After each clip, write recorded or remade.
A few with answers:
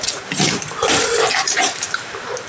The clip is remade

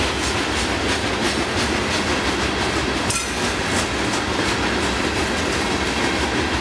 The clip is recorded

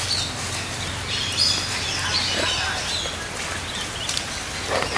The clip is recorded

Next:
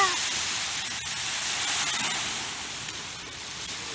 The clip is recorded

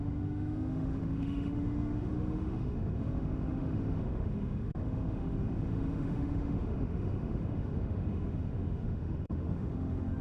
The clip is remade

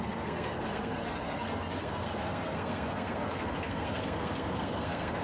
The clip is remade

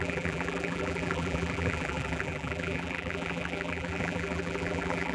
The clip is remade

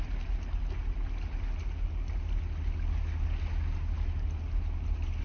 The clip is recorded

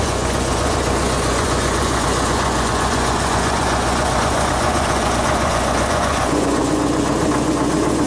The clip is remade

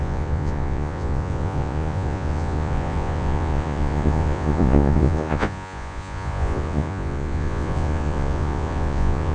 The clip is remade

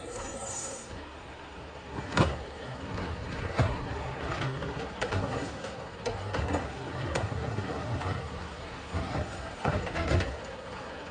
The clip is remade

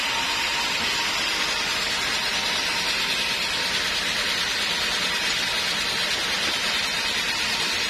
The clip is recorded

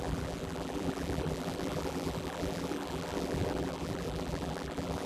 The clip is remade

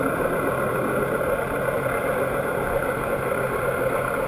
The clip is remade